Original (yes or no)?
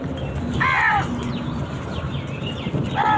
yes